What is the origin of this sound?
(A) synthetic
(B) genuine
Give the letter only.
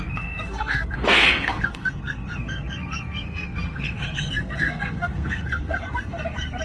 A